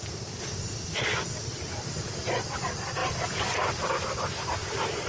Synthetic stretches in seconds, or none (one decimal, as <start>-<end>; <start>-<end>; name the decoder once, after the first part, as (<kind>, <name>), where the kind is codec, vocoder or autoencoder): 1.5-2.5 (vocoder, BigVGAN v2); 3.0-3.9; 4.6-5.1